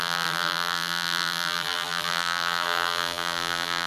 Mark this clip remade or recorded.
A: remade